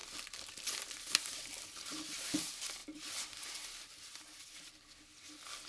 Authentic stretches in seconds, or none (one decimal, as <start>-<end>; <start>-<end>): 0.0-5.7